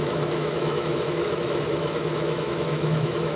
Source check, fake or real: fake